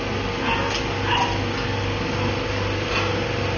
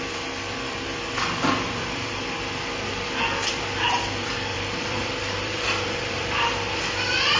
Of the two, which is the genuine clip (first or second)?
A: first